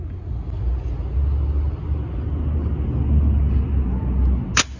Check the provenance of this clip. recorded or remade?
recorded